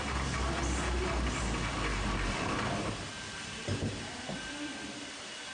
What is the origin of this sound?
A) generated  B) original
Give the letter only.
B